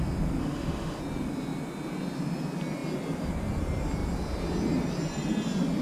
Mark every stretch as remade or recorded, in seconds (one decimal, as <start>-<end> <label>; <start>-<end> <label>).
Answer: 0.0-0.4 recorded; 0.4-1.0 remade; 1.0-5.8 recorded